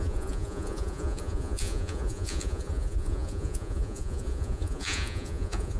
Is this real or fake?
fake